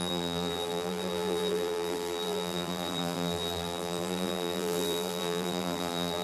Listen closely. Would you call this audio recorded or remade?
remade